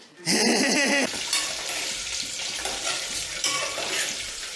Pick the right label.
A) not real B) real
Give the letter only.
A